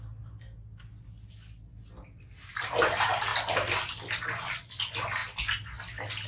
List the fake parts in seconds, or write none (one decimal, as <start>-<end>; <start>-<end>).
none